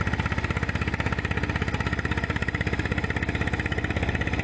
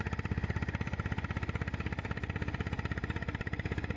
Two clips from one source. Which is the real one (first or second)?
first